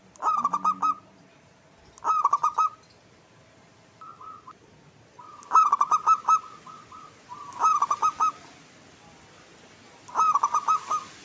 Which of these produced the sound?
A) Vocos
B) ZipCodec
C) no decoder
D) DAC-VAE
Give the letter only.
C